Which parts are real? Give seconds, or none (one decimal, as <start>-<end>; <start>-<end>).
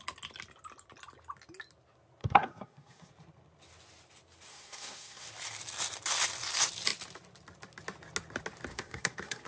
0.0-2.2; 3.1-4.5; 5.3-8.7